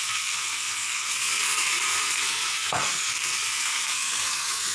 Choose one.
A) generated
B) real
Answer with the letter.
A